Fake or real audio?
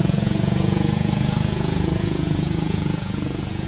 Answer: fake